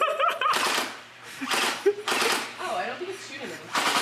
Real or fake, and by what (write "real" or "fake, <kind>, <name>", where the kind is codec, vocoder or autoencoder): fake, vocoder, BigVGAN v2